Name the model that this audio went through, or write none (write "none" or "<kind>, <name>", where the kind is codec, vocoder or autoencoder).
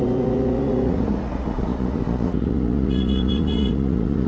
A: vocoder, Vocos